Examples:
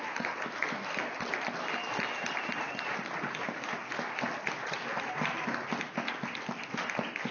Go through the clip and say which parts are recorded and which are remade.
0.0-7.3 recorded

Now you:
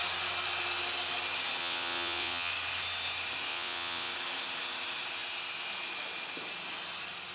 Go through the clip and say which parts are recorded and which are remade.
0.0-1.6 recorded; 1.6-2.5 remade; 2.5-3.5 recorded; 3.5-4.1 remade; 4.1-7.3 recorded

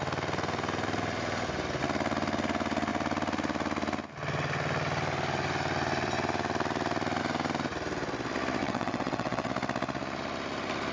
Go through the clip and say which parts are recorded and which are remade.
0.0-8.6 recorded; 8.6-9.5 remade; 9.5-10.9 recorded

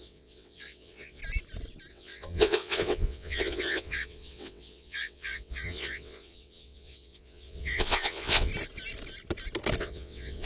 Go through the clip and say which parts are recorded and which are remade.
0.0-1.2 remade; 1.2-1.9 recorded; 1.9-8.5 remade; 8.5-9.8 recorded; 9.8-10.5 remade

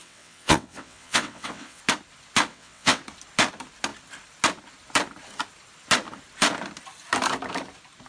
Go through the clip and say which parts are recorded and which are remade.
0.0-1.8 remade; 1.8-2.5 recorded; 2.5-3.0 remade; 3.0-8.1 recorded

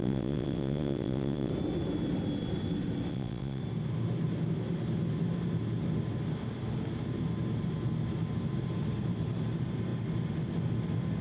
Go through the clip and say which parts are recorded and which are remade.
0.0-1.5 remade; 1.5-3.1 recorded; 3.1-3.6 remade; 3.6-11.2 recorded